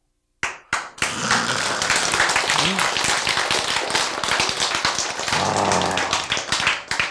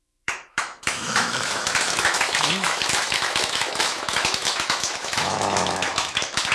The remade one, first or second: second